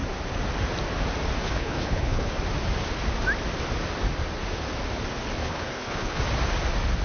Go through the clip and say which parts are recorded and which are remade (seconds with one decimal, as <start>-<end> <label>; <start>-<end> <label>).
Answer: 0.0-1.4 recorded; 1.4-2.3 remade; 2.3-5.4 recorded; 5.4-6.2 remade; 6.2-7.0 recorded